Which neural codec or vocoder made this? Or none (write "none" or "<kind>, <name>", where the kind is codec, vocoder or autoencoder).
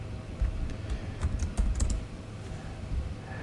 none